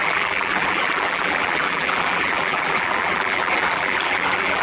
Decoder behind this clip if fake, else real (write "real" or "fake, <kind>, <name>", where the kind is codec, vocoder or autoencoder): fake, vocoder, BigVGAN v2